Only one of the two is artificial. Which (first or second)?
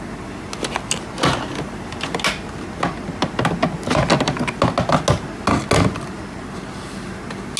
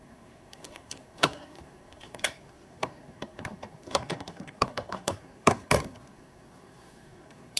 second